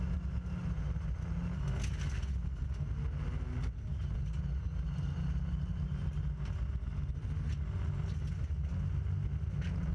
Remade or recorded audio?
recorded